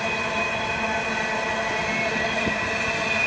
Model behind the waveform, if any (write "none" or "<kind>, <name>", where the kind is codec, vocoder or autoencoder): none